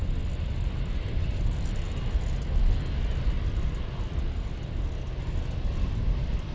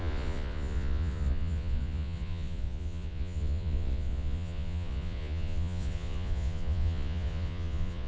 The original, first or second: first